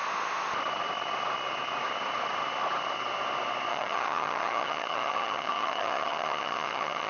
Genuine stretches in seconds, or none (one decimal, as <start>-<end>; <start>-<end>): 0.0-3.7